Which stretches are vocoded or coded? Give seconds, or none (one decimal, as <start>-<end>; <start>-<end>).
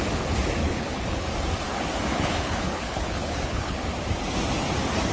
0.6-1.3; 2.1-3.8